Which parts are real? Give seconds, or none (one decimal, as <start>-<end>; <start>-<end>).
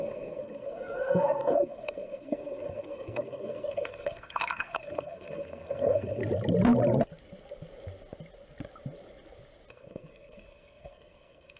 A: 6.2-9.7